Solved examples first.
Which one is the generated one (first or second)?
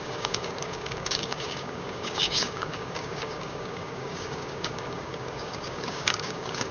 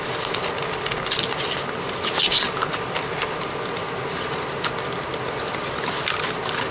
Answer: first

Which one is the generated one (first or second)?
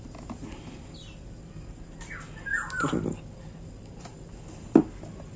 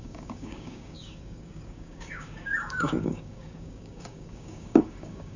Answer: second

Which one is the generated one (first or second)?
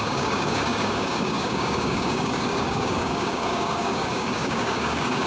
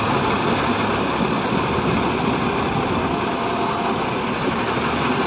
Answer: first